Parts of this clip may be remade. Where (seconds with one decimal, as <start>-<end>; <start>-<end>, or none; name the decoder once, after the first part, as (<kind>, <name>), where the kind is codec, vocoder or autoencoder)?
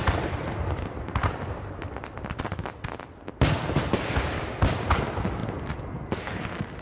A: 0.0-5.4 (vocoder, BigVGAN v2); 6.3-6.8